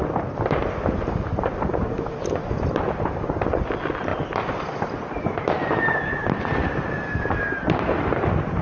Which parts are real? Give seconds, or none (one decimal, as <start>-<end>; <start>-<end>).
3.4-8.6